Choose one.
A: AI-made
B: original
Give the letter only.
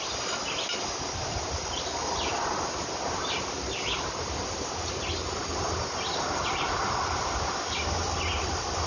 B